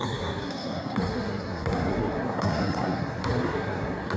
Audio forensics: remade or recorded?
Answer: remade